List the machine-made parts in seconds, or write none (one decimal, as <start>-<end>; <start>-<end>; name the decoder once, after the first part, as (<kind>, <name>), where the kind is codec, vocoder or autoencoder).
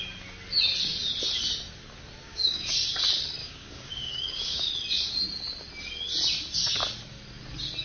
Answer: 2.2-2.7 (codec, DAC); 3.4-4.7